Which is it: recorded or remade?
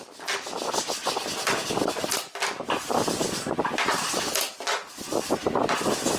recorded